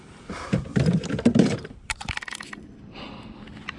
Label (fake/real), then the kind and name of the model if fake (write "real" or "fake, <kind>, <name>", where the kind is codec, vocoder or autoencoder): fake, vocoder, BigVGAN v2